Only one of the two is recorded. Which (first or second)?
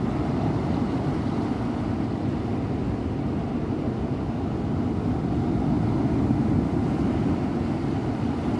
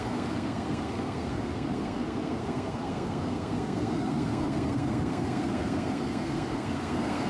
first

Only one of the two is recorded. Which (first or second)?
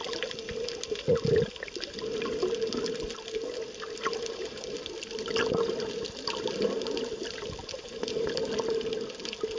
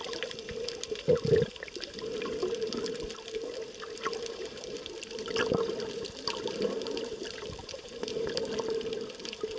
first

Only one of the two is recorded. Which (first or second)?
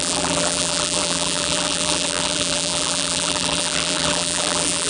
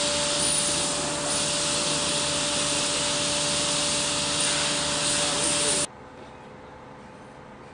second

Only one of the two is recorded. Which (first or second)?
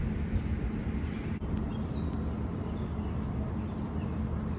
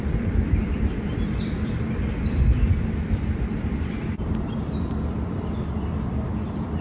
first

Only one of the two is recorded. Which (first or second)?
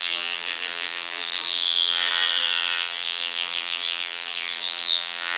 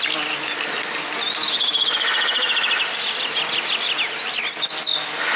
second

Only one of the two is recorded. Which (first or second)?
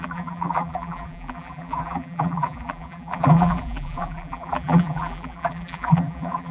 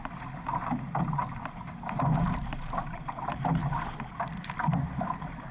second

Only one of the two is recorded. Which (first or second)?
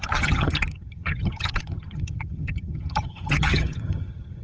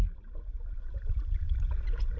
second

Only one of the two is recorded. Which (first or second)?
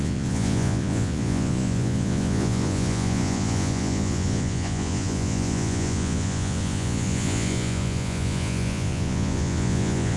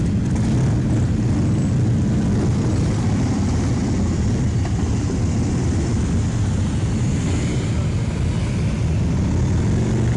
second